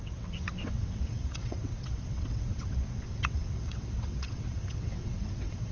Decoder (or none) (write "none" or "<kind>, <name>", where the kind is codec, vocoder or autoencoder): vocoder, WaveNeXt